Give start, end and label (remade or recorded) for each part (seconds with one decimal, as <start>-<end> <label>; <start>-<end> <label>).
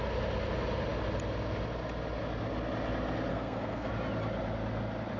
0.0-3.3 recorded; 3.3-3.9 remade; 3.9-5.2 recorded